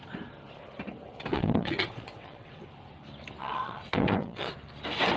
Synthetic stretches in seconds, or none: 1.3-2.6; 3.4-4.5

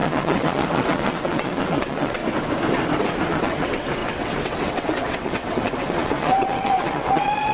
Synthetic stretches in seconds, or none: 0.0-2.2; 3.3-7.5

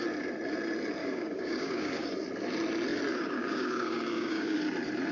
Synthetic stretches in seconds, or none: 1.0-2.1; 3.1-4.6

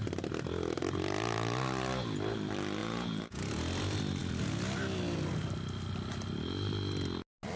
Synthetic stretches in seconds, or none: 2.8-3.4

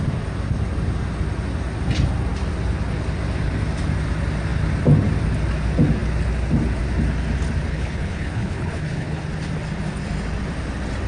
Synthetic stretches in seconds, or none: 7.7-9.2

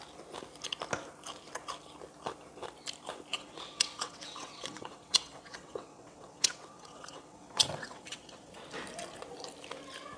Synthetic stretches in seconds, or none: 3.3-8.5